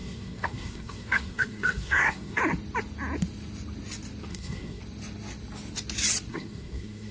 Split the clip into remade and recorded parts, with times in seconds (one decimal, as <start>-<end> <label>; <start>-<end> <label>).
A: 0.0-2.4 remade; 2.4-4.3 recorded; 4.3-4.8 remade; 4.8-6.3 recorded; 6.3-7.1 remade